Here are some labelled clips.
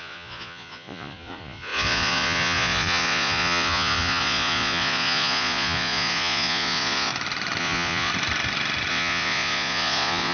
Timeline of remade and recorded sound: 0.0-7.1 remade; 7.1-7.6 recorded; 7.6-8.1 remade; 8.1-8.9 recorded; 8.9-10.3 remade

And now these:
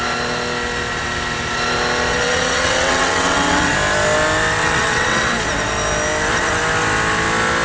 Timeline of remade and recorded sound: 0.0-2.1 recorded; 2.1-3.7 remade; 3.7-4.6 recorded; 4.6-5.3 remade; 5.3-7.6 recorded

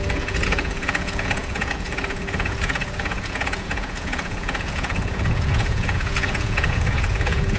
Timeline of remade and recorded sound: 0.0-7.6 remade

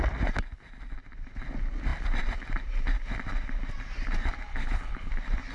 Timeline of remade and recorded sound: 0.0-4.5 recorded; 4.5-5.1 remade; 5.1-5.5 recorded

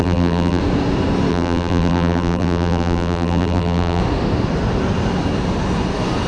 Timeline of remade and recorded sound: 0.0-0.6 remade; 0.6-1.3 recorded; 1.3-4.0 remade; 4.0-6.3 recorded

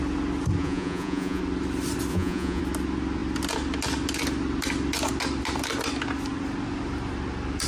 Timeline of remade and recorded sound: 0.0-0.6 recorded; 0.6-1.4 remade; 1.4-2.1 recorded; 2.1-2.6 remade; 2.6-7.7 recorded

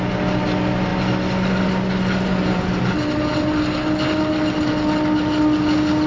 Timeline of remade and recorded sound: 0.0-6.1 recorded

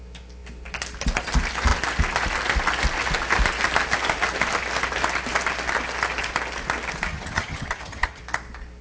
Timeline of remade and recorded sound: 0.0-7.1 recorded; 7.1-8.2 remade; 8.2-8.8 recorded